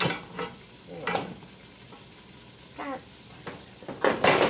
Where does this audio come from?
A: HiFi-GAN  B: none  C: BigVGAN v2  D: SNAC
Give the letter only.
B